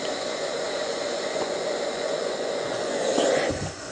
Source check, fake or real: fake